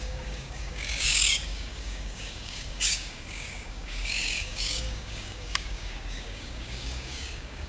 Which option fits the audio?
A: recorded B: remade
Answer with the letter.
B